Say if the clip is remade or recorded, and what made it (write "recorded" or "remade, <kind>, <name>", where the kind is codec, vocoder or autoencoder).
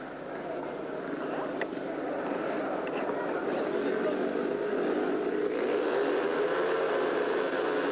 recorded